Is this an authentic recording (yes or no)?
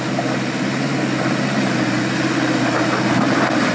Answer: yes